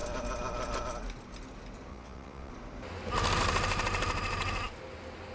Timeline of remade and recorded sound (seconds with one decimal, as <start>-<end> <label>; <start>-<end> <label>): 0.0-1.9 recorded; 1.9-2.5 remade; 2.5-5.3 recorded

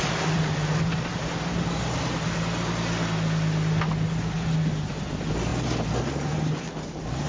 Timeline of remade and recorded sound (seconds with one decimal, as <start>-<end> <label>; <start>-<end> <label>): 0.0-1.1 remade; 1.1-4.9 recorded; 4.9-5.5 remade; 5.5-7.3 recorded

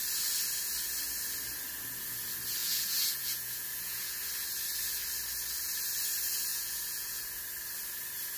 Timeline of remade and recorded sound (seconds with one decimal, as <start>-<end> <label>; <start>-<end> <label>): 0.0-2.6 recorded; 2.6-4.2 remade; 4.2-6.5 recorded; 6.5-7.4 remade; 7.4-8.4 recorded

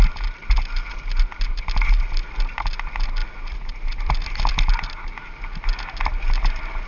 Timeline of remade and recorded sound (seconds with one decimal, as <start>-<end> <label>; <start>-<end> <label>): 0.0-6.9 recorded

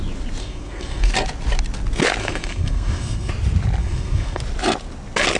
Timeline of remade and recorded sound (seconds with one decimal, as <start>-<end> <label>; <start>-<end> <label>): 0.0-0.4 recorded; 0.4-1.1 remade; 1.1-2.2 recorded; 2.2-3.3 remade; 3.3-3.8 recorded; 3.8-4.4 remade; 4.4-5.4 recorded

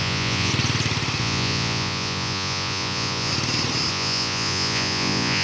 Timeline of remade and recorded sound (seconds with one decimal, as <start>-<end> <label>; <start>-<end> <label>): 0.0-0.5 remade; 0.5-1.2 recorded; 1.2-3.3 remade; 3.3-3.9 recorded; 3.9-5.4 remade

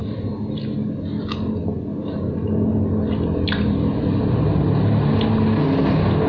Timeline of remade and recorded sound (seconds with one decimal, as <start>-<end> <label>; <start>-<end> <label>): 0.0-6.3 recorded